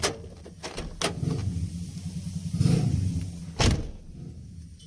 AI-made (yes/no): no